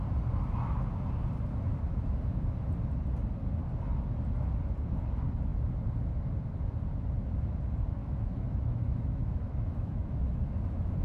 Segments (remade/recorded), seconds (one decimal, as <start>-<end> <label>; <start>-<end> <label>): 0.0-1.7 recorded; 1.7-2.7 remade; 2.7-8.0 recorded; 8.0-11.0 remade